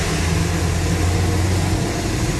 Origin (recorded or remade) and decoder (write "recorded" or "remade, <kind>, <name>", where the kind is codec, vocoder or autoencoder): recorded